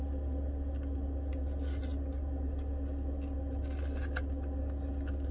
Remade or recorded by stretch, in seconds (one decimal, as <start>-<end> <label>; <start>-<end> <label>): 0.0-5.3 recorded